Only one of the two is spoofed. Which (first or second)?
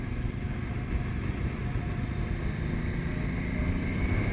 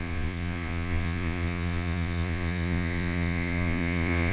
second